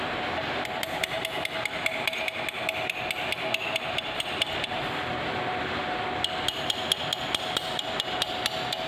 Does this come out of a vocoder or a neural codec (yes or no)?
no